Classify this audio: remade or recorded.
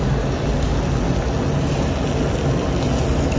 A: recorded